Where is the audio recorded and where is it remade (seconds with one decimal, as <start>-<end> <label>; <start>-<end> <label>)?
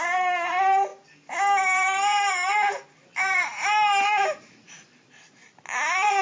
0.0-6.2 remade